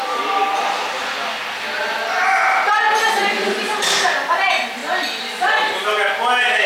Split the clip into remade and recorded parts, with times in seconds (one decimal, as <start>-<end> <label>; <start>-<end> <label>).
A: 0.0-4.8 remade; 4.8-6.7 recorded